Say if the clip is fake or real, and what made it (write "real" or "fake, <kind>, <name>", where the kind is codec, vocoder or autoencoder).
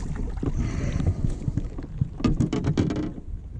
real